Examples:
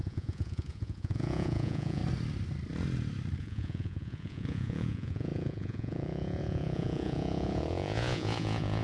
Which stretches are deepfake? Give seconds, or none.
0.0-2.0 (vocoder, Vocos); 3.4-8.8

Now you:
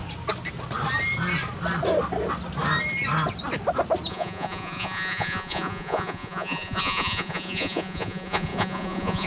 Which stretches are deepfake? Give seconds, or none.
4.1-9.3 (vocoder, Vocos)